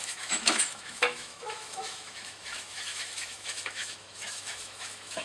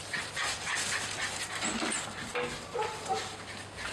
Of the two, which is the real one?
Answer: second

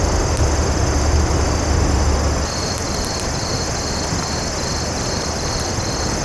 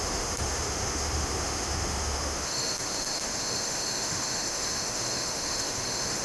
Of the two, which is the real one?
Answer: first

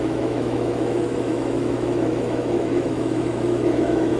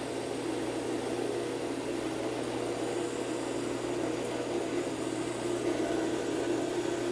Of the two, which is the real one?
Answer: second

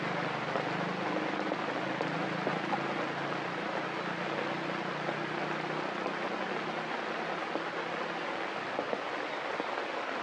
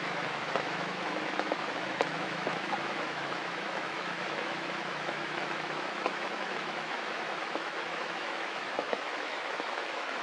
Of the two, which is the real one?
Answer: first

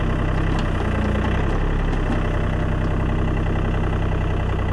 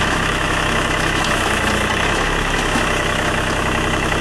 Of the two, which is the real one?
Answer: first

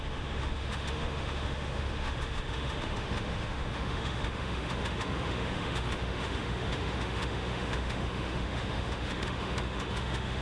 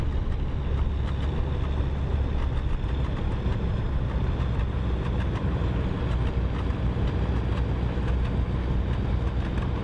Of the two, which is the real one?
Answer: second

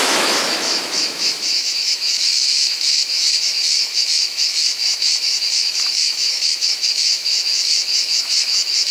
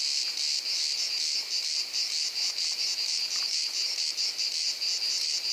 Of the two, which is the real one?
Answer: second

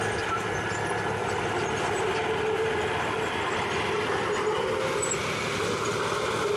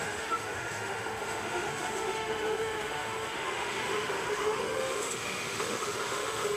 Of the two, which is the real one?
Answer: first